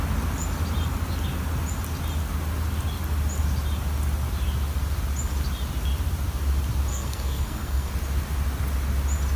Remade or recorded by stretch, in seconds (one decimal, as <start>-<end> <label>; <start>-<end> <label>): 0.0-6.9 recorded; 6.9-7.9 remade; 7.9-9.4 recorded